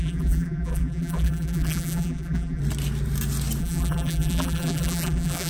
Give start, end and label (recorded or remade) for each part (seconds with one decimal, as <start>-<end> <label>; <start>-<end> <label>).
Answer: 0.0-2.6 remade; 2.6-3.6 recorded; 3.6-5.5 remade